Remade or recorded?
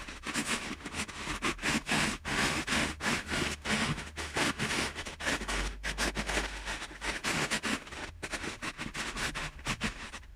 remade